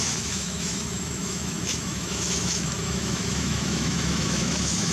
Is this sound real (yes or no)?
no